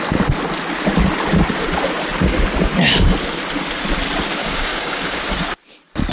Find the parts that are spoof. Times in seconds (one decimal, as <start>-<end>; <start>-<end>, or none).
4.4-5.2